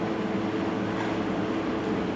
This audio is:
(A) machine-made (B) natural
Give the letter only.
B